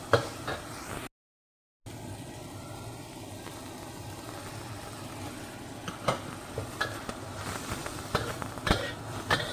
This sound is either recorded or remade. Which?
recorded